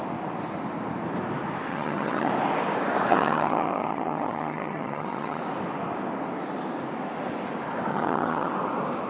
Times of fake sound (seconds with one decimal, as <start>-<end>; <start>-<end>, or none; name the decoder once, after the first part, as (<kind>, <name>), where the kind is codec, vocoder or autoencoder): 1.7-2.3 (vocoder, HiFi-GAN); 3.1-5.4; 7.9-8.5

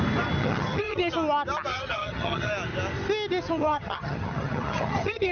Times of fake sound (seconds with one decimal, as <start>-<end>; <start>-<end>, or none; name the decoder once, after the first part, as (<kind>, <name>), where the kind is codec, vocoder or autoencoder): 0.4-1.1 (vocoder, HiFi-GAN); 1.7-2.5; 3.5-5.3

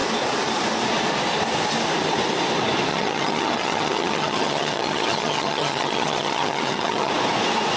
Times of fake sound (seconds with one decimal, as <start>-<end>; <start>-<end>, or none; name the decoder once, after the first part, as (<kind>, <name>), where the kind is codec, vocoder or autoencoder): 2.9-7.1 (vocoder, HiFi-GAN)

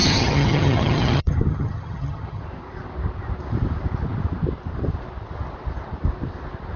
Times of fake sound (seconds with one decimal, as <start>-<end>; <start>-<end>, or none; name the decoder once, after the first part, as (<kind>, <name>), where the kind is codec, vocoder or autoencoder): 0.0-2.4 (vocoder, HiFi-GAN)

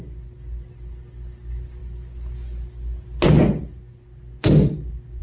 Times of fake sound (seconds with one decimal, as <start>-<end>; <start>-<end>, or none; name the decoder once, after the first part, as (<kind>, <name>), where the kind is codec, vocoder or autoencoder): none